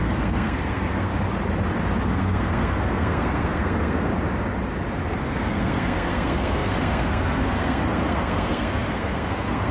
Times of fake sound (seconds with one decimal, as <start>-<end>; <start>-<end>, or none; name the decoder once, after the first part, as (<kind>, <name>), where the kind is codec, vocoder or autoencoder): 0.0-1.1 (codec, SNAC); 2.1-4.1; 5.2-9.7